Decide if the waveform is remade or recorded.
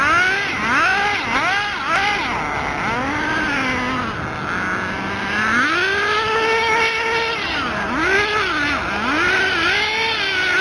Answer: recorded